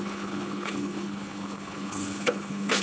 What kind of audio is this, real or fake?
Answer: fake